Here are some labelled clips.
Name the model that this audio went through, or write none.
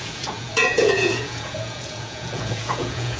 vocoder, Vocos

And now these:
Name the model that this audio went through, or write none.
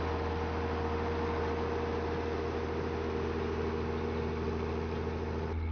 none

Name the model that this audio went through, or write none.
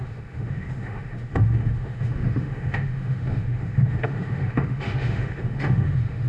autoencoder, DAC-VAE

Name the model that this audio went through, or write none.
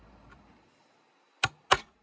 none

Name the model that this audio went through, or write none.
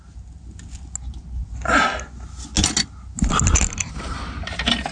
none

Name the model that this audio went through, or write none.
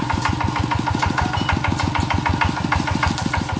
none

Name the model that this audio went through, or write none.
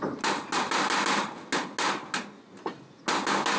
none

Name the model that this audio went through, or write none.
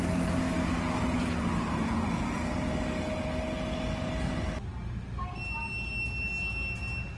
none